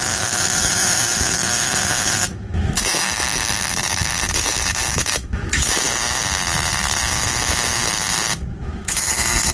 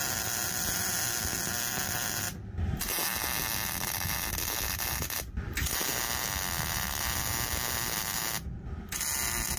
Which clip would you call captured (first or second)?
second